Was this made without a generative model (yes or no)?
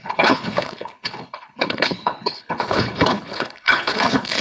no